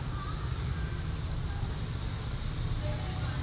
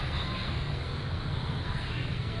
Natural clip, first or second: first